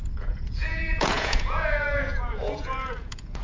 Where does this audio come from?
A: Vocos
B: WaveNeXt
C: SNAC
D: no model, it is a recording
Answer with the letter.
A